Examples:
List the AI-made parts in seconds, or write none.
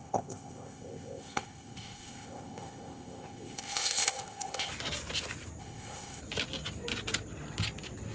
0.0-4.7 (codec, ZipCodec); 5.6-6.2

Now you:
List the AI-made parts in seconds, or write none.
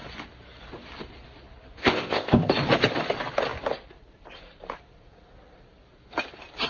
1.8-2.5 (codec, ZipCodec)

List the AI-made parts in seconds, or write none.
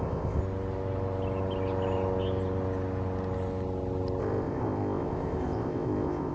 0.0-0.4 (codec, ZipCodec); 4.2-6.3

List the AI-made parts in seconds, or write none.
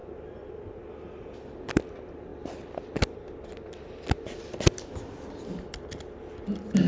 none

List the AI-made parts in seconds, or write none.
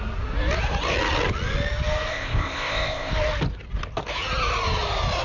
2.1-3.1 (codec, ZipCodec)